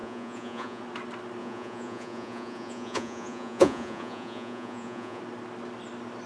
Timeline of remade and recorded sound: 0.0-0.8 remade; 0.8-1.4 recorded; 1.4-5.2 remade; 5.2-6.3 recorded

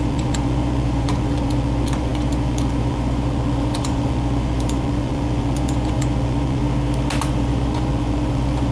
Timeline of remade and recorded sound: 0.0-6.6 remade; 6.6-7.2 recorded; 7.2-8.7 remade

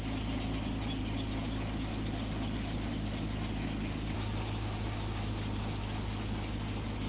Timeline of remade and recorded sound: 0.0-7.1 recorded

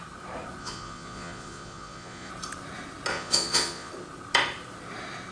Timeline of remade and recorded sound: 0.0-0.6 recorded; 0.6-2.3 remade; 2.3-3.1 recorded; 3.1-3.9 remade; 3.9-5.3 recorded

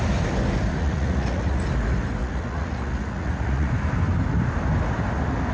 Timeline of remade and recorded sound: 0.0-0.7 recorded; 0.7-1.6 remade; 1.6-2.2 recorded; 2.2-3.7 remade; 3.7-5.5 recorded

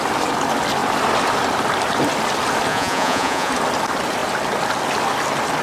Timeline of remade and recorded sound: 0.0-2.7 recorded; 2.7-3.5 remade; 3.5-5.6 recorded